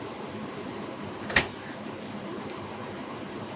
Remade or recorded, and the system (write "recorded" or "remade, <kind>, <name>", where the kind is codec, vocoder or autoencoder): recorded